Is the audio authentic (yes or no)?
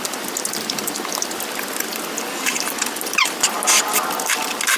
yes